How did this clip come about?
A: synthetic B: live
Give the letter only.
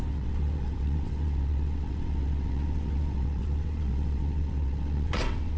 A